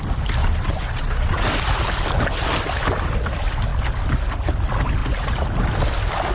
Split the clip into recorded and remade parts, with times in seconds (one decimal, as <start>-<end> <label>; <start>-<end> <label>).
0.0-0.4 recorded; 0.4-1.4 remade; 1.4-6.3 recorded

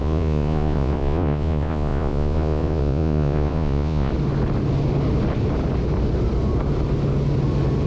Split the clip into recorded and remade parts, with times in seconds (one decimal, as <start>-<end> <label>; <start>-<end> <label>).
0.0-4.1 remade; 4.1-7.9 recorded

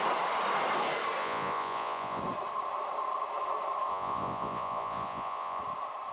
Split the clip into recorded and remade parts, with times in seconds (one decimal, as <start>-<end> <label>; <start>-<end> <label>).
0.0-1.2 recorded; 1.2-2.2 remade; 2.2-3.9 recorded; 3.9-5.6 remade; 5.6-6.1 recorded

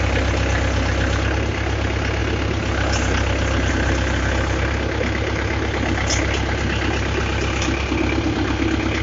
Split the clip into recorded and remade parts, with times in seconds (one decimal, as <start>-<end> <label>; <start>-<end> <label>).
0.0-9.0 recorded